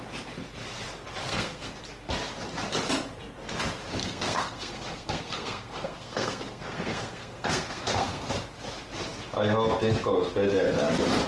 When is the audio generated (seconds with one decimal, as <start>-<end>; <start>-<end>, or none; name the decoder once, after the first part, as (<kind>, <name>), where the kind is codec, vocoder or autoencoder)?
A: 1.2-1.8 (codec, SNAC); 4.0-8.3